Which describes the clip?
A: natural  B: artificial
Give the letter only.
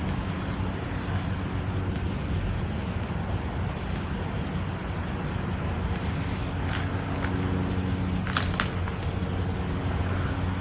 A